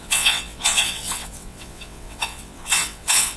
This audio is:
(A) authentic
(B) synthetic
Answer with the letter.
B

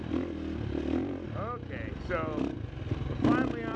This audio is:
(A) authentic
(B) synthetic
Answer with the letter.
A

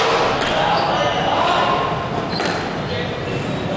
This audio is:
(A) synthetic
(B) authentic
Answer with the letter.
B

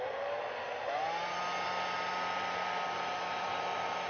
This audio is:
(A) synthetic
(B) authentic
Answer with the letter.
B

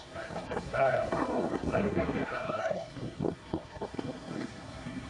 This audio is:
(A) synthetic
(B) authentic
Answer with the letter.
A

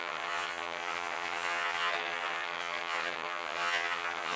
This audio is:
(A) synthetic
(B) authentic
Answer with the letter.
A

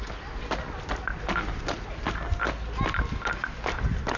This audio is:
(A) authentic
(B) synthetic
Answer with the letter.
A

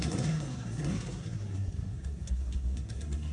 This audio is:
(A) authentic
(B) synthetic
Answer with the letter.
B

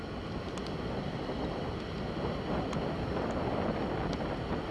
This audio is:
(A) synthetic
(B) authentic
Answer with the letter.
B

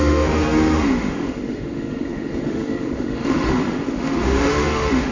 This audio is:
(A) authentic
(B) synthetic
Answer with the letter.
B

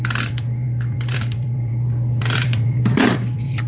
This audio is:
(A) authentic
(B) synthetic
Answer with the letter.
B